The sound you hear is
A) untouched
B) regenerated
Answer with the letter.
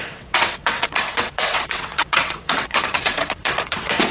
B